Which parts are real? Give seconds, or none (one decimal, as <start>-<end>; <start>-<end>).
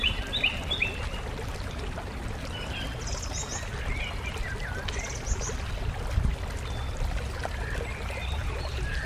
0.0-8.4